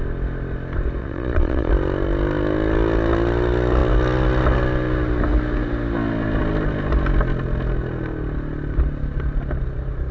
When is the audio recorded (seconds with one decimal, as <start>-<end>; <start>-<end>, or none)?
0.0-1.0; 1.7-10.1